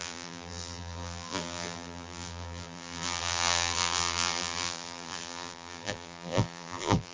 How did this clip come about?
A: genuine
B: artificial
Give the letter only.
B